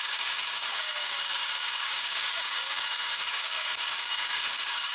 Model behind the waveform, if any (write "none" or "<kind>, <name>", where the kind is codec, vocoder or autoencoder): codec, DAC